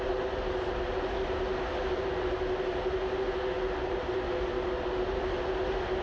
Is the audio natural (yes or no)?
yes